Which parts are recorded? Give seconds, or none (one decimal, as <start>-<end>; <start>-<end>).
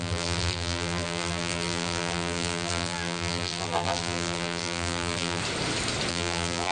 5.4-6.1